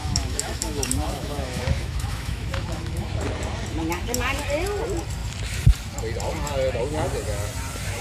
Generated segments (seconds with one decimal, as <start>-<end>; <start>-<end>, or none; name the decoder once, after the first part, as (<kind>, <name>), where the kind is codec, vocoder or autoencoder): 0.0-3.1 (autoencoder, DAC-VAE)